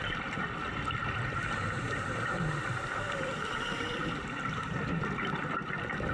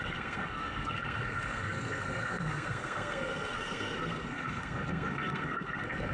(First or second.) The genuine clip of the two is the first